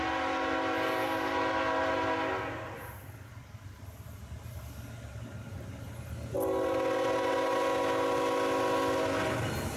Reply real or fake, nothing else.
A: real